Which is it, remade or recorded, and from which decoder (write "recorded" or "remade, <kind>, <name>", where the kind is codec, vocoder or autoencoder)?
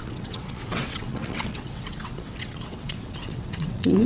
remade, vocoder, WaveNeXt